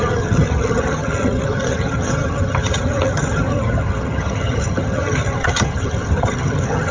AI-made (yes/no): yes